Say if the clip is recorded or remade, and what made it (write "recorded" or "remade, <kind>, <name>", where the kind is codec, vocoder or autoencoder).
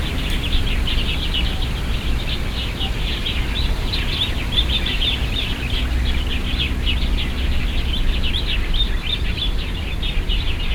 recorded